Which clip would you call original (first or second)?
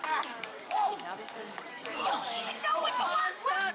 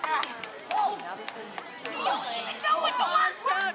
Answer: second